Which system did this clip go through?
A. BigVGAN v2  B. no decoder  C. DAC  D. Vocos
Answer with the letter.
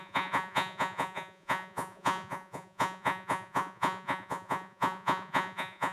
D